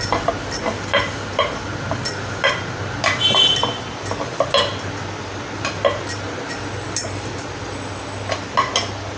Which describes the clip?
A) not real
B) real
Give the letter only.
B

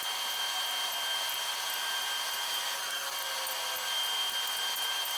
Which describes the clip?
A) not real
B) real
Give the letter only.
B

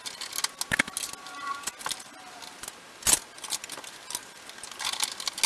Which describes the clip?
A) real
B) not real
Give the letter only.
A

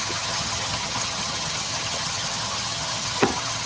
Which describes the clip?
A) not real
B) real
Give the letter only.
A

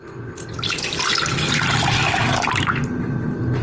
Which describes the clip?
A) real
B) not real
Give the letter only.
A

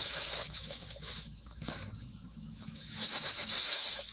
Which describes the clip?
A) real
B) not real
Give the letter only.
B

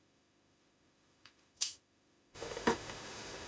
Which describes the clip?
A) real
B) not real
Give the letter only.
B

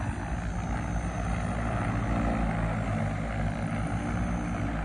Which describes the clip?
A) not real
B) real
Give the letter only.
B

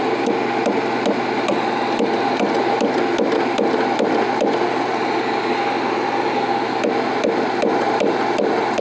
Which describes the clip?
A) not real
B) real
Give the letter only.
B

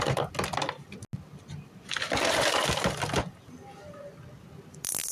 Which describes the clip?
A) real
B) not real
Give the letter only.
A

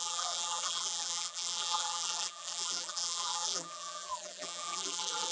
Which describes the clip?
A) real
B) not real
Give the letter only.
B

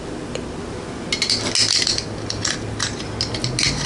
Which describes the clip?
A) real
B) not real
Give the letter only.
A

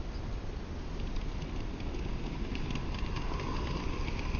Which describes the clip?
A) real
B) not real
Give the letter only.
A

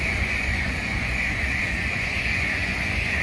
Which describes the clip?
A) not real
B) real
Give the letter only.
A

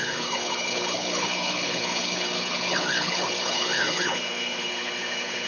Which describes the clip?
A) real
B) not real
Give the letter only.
B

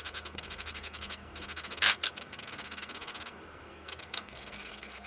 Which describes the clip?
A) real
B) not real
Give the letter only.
B